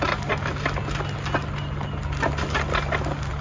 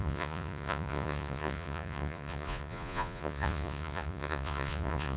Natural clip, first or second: first